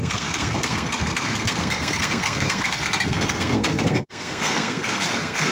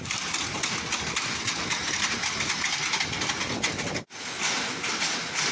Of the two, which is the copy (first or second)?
first